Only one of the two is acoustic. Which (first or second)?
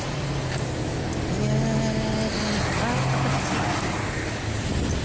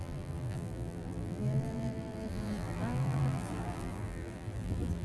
first